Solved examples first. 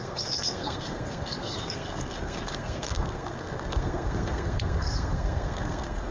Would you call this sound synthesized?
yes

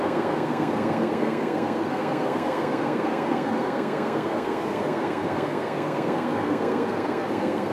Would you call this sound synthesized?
yes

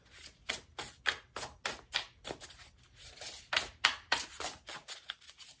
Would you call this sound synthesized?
no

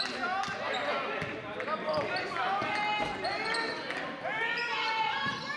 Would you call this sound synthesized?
no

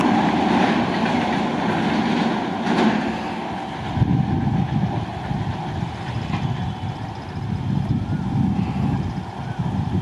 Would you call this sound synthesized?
no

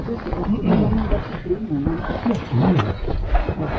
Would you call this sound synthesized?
no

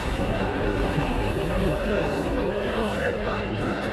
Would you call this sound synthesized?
yes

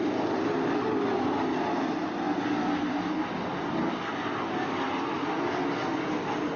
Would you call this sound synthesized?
no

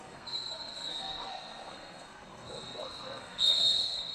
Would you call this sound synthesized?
yes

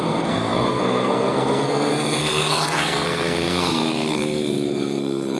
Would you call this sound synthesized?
yes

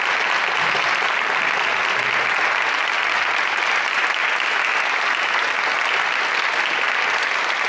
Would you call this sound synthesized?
no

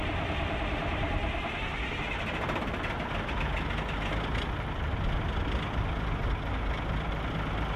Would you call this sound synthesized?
no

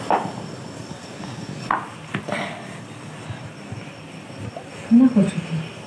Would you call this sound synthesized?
no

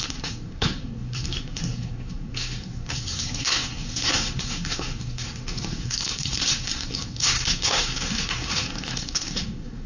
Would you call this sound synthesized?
yes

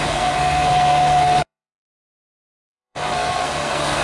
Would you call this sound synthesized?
yes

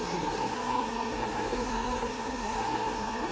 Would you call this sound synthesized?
yes